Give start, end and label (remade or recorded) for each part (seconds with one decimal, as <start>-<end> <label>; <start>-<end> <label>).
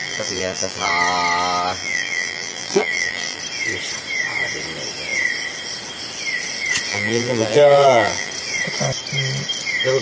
0.0-0.9 remade; 0.9-1.8 recorded; 1.8-3.4 remade; 3.4-6.9 recorded; 6.9-8.3 remade; 8.3-10.0 recorded